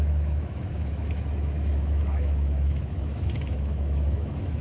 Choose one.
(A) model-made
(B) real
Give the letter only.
A